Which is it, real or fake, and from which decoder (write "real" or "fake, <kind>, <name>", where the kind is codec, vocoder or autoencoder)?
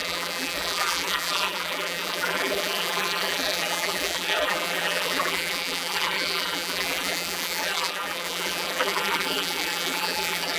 fake, vocoder, BigVGAN v2